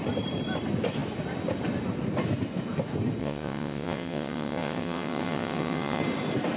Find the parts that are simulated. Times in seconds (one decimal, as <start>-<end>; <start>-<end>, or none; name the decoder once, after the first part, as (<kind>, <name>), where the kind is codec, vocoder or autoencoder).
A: 3.2-6.0 (vocoder, WaveNeXt)